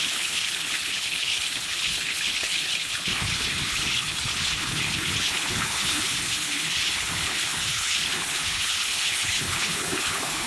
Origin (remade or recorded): remade